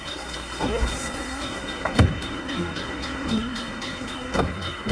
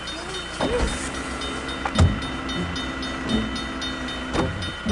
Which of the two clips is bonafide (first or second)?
second